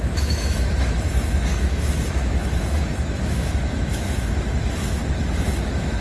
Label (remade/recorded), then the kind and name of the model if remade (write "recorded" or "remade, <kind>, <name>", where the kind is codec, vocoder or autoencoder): remade, autoencoder, DAC-VAE